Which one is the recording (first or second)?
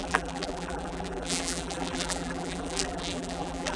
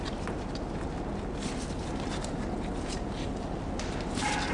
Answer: second